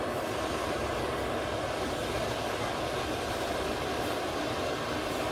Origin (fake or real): real